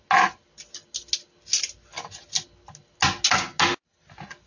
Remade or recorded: recorded